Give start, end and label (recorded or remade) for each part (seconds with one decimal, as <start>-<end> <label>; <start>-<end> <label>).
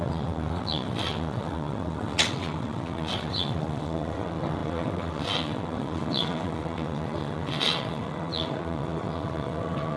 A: 0.0-10.0 remade